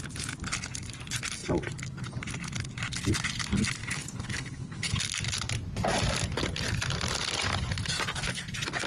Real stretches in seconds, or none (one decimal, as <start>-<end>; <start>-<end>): 0.0-3.8; 5.0-8.9